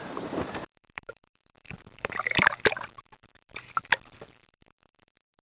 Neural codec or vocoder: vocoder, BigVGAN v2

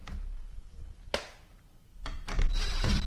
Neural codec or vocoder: vocoder, BigVGAN v2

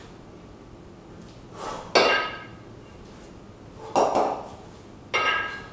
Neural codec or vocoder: none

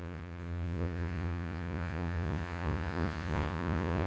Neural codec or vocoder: vocoder, Vocos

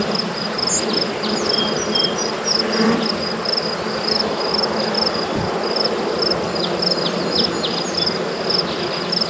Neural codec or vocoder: none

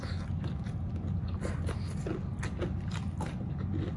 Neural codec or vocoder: none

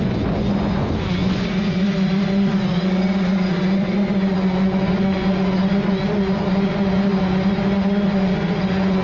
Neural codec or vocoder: vocoder, Vocos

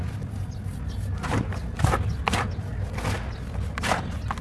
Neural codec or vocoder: none